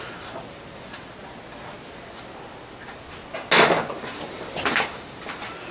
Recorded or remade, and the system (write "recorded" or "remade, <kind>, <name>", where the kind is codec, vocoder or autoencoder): recorded